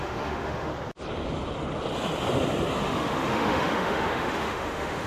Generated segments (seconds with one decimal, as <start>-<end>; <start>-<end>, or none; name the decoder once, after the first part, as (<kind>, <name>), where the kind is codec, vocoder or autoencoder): 0.0-0.7 (autoencoder, DAC-VAE); 2.8-5.1